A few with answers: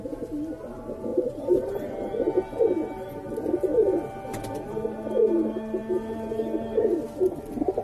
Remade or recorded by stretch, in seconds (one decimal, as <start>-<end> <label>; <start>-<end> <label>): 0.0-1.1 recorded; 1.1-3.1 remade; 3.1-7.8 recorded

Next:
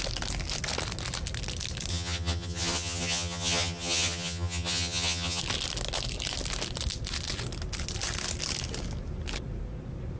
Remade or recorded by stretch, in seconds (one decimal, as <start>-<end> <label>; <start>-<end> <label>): 0.0-1.9 recorded; 1.9-5.4 remade; 5.4-10.2 recorded

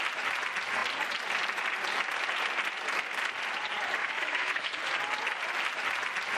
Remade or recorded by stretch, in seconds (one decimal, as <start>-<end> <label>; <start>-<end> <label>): 0.0-4.0 recorded; 4.0-4.7 remade; 4.7-6.4 recorded

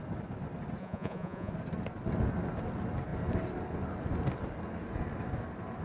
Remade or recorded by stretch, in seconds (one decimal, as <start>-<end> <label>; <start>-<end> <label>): 0.0-0.8 recorded; 0.8-1.5 remade; 1.5-5.8 recorded

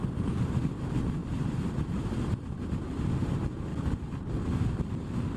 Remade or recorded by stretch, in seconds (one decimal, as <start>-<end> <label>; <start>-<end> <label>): 0.0-1.2 recorded; 1.2-2.7 remade; 2.7-5.4 recorded

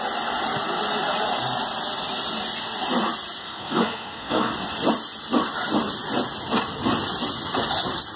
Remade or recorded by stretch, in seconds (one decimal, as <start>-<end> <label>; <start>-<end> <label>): 0.0-3.4 recorded; 3.4-4.5 remade; 4.5-8.2 recorded